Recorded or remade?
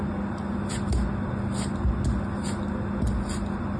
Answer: recorded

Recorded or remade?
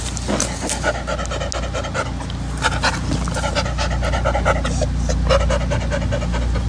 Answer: recorded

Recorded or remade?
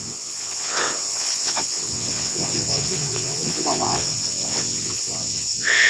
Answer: remade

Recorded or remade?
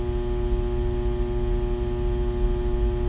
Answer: recorded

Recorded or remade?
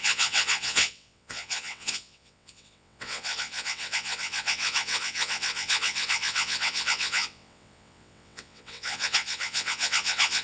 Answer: remade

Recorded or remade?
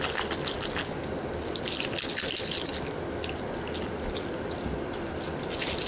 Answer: recorded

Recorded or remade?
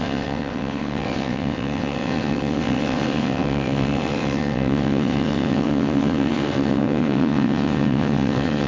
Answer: remade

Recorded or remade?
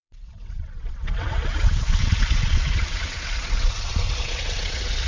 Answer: remade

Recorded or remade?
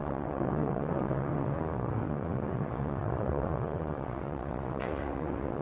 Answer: remade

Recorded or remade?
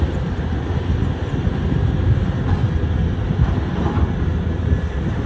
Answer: recorded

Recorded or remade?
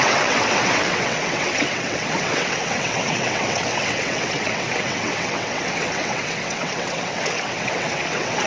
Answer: remade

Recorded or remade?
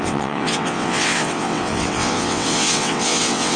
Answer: remade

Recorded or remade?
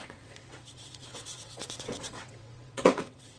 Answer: remade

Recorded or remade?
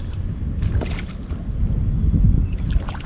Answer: recorded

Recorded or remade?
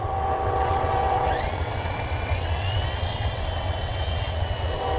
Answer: remade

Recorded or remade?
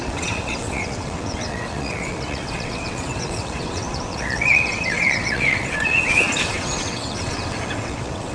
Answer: remade